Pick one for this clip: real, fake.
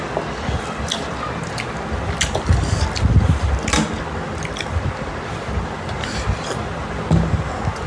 real